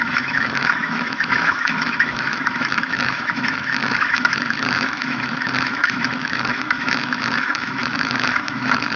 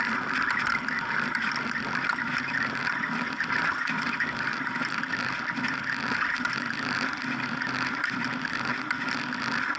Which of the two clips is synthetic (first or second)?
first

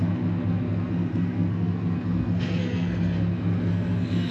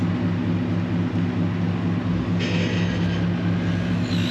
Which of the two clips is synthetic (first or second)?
first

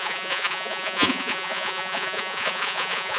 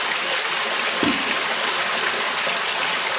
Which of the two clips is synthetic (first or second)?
first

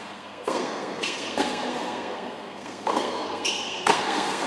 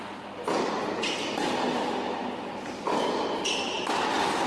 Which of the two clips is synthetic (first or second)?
first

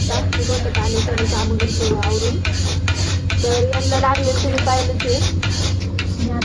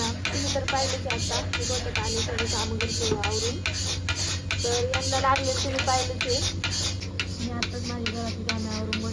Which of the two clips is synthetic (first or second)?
first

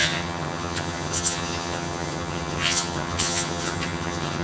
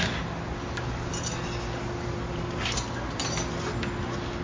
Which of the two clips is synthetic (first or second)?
first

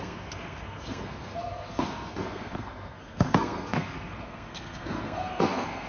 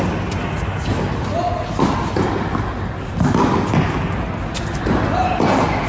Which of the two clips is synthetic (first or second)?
first